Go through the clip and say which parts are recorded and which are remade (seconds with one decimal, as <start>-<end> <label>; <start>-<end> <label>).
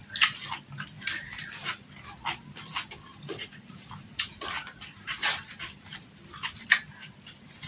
0.0-3.1 recorded; 3.1-6.6 remade; 6.6-7.7 recorded